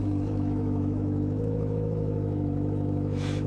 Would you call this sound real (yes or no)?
no